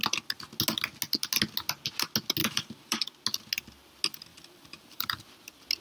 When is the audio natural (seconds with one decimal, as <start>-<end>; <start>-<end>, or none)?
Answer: 0.0-2.4; 3.1-4.3; 5.2-5.8